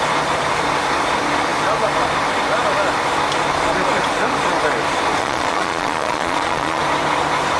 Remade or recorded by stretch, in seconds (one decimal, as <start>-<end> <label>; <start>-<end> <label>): 0.0-5.2 recorded; 5.2-6.8 remade; 6.8-7.6 recorded